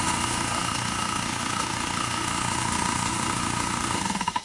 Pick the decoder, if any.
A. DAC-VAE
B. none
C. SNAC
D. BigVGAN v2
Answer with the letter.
A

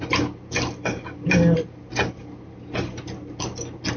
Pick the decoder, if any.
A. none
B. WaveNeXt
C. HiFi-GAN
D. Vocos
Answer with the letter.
A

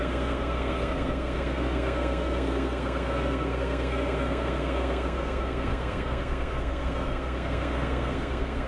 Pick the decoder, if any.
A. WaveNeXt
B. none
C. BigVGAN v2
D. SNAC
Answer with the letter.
D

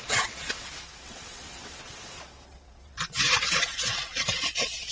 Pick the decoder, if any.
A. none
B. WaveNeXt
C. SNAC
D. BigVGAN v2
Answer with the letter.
B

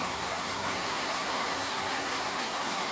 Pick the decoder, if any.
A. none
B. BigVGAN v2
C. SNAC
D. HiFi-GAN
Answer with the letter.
C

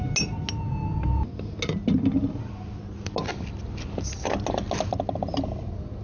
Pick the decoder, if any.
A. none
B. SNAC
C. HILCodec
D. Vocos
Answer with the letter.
A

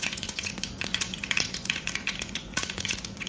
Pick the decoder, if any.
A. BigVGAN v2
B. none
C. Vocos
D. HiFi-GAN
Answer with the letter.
C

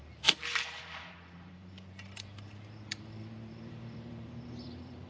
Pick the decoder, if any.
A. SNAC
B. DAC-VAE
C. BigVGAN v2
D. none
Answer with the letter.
C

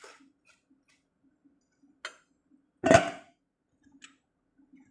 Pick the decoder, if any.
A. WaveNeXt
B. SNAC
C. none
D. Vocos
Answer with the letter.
C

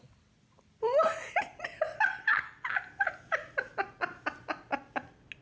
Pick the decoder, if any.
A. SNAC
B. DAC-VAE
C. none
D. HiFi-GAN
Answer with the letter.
C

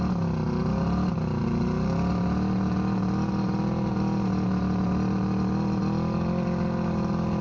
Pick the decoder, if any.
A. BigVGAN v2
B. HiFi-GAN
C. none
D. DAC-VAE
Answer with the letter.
C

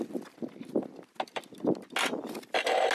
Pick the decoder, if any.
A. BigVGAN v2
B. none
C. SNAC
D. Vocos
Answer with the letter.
B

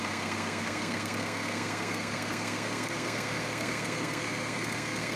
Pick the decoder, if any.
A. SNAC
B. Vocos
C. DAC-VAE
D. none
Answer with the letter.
A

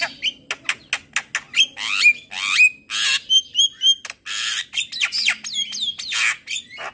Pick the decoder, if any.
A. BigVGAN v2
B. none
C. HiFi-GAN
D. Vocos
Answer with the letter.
B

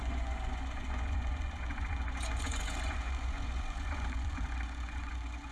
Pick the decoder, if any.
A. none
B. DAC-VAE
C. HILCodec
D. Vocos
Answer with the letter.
D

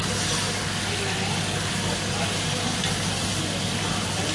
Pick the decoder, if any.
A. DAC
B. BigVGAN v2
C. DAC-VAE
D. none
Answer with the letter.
D